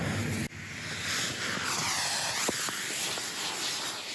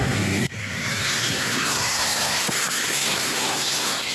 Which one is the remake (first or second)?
second